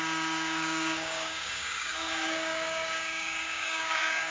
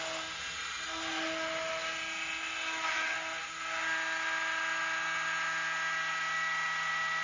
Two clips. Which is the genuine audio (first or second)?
second